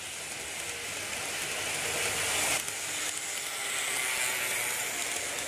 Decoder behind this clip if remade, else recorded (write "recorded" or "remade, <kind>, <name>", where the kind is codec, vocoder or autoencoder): recorded